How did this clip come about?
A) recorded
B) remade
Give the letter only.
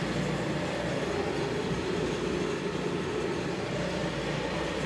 A